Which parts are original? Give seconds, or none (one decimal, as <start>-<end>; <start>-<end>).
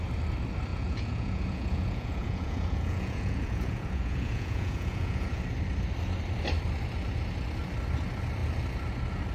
0.0-0.7; 5.4-9.3